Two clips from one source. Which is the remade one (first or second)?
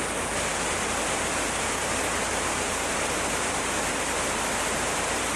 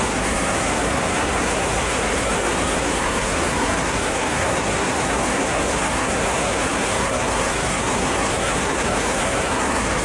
second